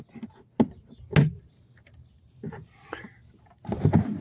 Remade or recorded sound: recorded